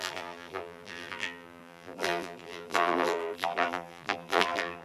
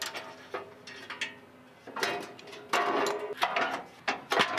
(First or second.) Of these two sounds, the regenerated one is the first